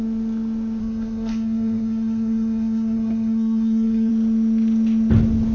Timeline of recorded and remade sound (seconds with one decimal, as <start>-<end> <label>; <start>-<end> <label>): 0.0-0.8 recorded; 0.8-4.1 remade; 4.1-5.5 recorded